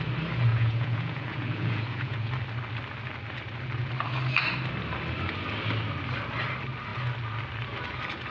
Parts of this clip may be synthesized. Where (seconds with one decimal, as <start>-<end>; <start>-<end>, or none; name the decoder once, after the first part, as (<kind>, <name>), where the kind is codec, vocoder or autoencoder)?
0.5-2.3 (vocoder, Vocos)